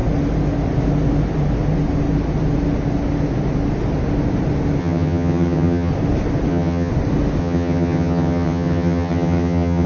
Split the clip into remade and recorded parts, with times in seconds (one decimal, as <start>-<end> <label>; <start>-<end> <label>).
0.0-4.8 recorded; 4.8-5.9 remade; 5.9-6.5 recorded; 6.5-6.9 remade; 6.9-7.4 recorded; 7.4-9.9 remade